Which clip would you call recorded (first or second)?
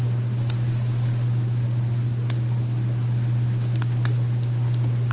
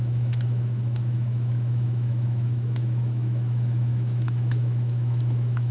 first